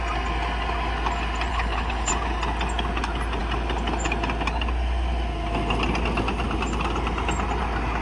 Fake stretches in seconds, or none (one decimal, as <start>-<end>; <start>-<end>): 1.5-2.1